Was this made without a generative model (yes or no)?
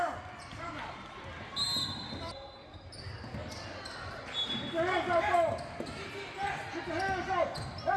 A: yes